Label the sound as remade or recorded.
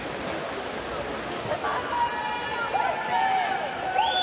recorded